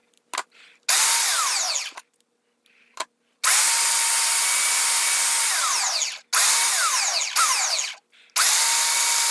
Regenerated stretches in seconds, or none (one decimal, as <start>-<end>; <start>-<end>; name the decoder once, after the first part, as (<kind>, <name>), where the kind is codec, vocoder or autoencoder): none